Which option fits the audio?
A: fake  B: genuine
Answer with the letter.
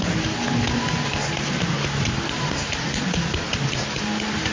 B